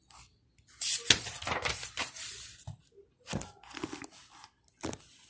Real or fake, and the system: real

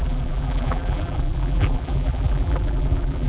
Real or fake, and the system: fake, vocoder, BigVGAN v2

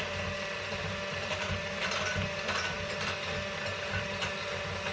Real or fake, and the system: real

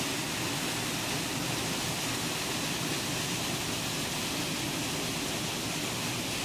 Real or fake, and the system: real